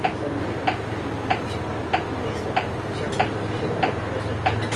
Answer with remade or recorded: recorded